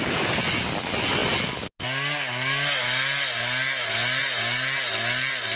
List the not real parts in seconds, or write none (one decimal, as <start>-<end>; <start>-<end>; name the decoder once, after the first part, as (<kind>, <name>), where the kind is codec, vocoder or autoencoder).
none